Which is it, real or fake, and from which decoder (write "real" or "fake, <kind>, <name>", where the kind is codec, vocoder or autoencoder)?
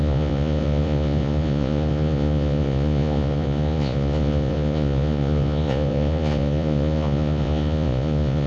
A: fake, vocoder, Vocos